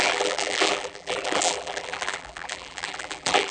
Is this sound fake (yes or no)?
yes